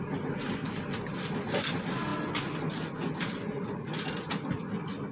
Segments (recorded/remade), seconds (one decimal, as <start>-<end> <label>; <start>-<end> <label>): 0.0-5.1 recorded